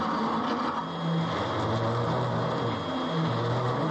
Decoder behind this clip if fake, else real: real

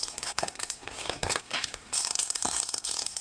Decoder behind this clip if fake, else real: fake, codec, SNAC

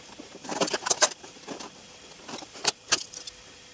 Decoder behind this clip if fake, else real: fake, vocoder, BigVGAN v2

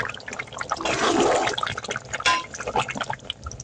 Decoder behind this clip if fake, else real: real